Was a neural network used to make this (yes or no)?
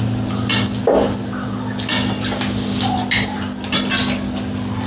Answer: no